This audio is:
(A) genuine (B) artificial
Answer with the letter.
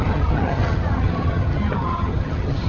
B